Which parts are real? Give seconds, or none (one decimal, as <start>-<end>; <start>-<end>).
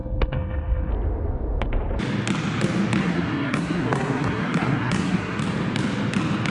0.9-3.0; 5.4-6.5